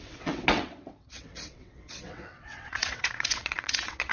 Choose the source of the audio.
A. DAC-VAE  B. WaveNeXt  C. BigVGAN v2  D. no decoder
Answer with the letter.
B